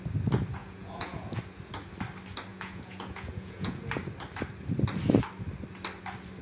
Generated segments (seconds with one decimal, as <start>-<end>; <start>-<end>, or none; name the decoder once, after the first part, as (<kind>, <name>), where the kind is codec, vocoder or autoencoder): 0.6-1.4 (vocoder, Vocos); 2.5-3.8